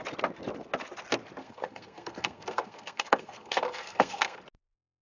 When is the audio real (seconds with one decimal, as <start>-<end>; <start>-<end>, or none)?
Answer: 0.0-1.4; 4.4-5.0